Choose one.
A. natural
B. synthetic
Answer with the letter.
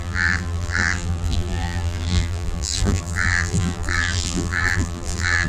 B